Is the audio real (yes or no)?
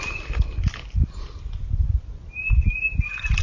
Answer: yes